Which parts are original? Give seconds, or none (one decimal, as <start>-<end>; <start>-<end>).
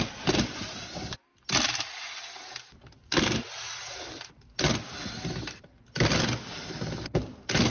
0.0-7.7